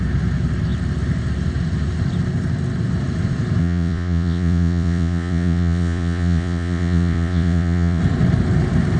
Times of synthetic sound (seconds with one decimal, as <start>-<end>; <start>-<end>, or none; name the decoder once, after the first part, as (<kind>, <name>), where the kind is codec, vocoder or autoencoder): 3.6-8.0 (vocoder, Vocos)

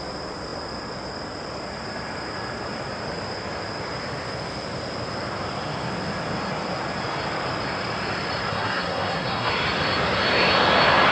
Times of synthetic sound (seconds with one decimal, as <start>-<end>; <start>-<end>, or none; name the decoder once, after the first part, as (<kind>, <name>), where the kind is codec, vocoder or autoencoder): 8.5-9.5 (codec, SNAC)